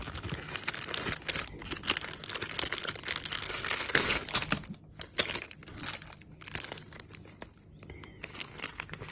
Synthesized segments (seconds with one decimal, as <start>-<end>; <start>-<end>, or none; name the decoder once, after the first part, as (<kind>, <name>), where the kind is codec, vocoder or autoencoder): 3.4-4.2 (codec, SNAC); 8.3-9.1